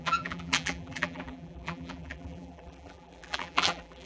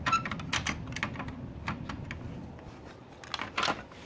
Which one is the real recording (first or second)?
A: second